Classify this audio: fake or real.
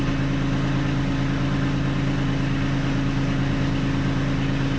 real